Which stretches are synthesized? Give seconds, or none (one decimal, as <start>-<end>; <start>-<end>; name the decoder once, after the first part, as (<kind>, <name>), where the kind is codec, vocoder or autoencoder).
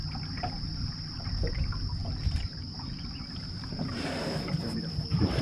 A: 2.0-5.4 (vocoder, BigVGAN v2)